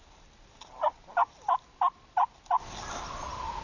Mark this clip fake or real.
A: real